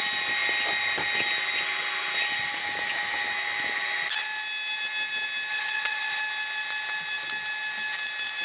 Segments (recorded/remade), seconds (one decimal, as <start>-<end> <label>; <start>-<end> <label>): 0.0-5.5 recorded; 5.5-6.2 remade; 6.2-8.4 recorded

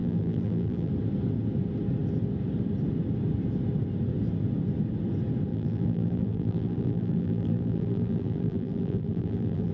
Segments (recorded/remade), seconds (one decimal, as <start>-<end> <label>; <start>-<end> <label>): 0.0-0.9 remade; 0.9-5.5 recorded; 5.5-9.7 remade

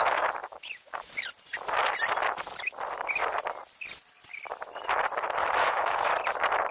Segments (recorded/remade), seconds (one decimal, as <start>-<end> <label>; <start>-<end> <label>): 0.0-0.4 recorded; 0.4-1.1 remade; 1.1-5.4 recorded; 5.4-6.1 remade; 6.1-6.7 recorded

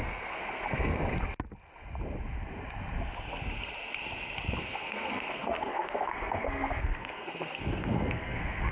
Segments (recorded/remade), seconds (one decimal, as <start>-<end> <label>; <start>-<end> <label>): 0.0-1.0 remade; 1.0-4.6 recorded; 4.6-8.7 remade

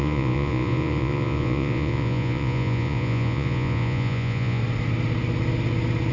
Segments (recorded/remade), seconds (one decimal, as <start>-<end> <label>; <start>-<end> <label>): 0.0-4.6 remade; 4.6-6.1 recorded

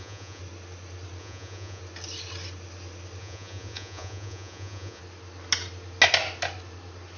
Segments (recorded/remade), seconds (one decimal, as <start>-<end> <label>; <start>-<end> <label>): 0.0-0.4 remade; 0.4-1.2 recorded; 1.2-1.8 remade; 1.8-3.2 recorded; 3.2-5.0 remade; 5.0-7.2 recorded

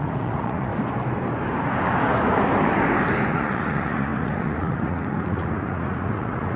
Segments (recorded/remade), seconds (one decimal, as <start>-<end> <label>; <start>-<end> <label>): 0.0-0.7 remade; 0.7-3.3 recorded; 3.3-6.6 remade